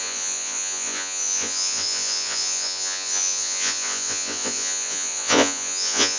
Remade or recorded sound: remade